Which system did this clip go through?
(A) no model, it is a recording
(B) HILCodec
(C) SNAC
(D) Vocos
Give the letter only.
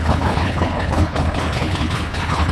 B